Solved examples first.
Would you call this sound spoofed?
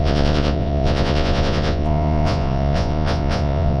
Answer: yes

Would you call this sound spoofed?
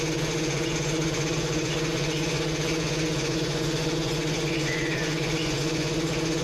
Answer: yes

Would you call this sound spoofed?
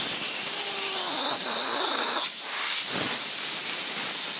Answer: no